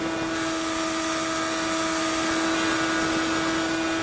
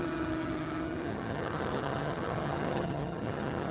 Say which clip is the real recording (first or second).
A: first